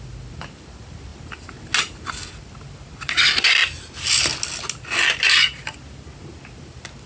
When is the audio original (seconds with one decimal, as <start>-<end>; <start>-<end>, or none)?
0.0-7.1